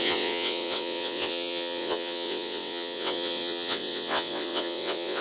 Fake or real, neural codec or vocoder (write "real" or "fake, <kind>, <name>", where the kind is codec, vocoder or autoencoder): fake, vocoder, WaveNeXt